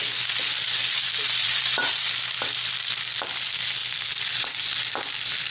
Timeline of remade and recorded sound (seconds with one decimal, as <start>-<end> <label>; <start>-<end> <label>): 0.0-0.8 recorded; 0.8-2.7 remade; 2.7-3.8 recorded; 3.8-4.6 remade; 4.6-5.5 recorded